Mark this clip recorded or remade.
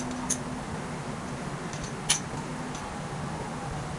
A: recorded